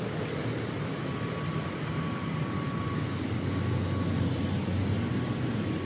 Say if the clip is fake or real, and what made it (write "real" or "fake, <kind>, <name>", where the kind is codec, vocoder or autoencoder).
real